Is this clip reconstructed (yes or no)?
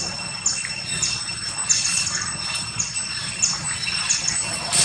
no